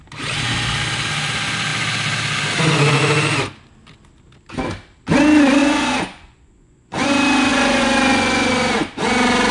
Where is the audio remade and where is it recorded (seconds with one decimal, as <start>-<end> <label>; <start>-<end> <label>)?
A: 0.0-5.6 recorded; 5.6-7.1 remade; 7.1-7.5 recorded; 7.5-8.5 remade; 8.5-9.5 recorded